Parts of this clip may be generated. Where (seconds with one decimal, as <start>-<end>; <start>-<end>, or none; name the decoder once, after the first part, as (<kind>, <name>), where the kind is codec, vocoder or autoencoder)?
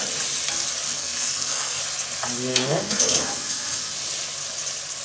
0.9-1.8 (codec, SNAC); 2.5-3.9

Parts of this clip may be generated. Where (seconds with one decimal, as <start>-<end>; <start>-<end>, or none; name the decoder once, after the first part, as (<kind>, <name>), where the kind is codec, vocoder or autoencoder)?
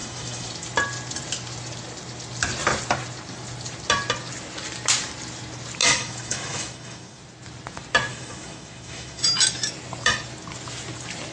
0.0-0.5 (autoencoder, DAC-VAE); 5.8-7.2; 8.1-9.2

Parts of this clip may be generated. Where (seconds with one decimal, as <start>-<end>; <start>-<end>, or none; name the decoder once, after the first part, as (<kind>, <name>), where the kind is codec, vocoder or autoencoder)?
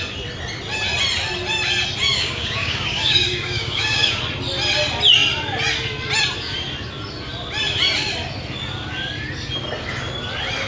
2.1-4.2 (codec, DAC)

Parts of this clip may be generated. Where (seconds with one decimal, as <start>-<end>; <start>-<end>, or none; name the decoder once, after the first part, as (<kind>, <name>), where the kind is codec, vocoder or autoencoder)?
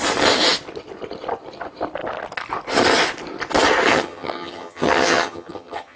3.9-6.0 (vocoder, HiFi-GAN)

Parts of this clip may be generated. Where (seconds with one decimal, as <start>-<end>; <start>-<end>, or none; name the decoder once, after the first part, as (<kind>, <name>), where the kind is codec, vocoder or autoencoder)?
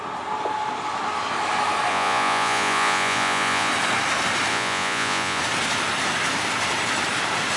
1.9-3.7 (vocoder, Vocos); 4.5-5.4